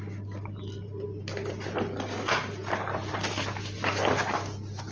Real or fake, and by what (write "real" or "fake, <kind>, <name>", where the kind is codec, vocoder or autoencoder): real